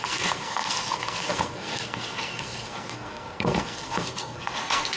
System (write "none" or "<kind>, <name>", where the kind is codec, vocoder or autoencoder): codec, SNAC